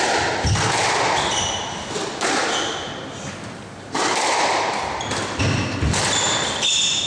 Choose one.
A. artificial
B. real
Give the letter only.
B